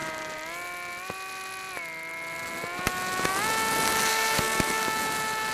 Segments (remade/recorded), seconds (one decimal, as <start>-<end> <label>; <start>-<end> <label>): 0.0-4.1 recorded; 4.1-4.8 remade; 4.8-5.5 recorded